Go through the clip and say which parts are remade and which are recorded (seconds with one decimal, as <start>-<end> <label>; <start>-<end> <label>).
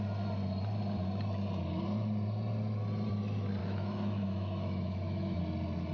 0.0-3.6 recorded; 3.6-5.4 remade; 5.4-5.9 recorded